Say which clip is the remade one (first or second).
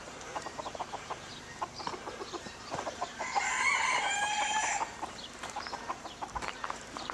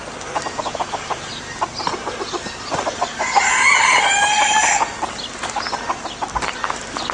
first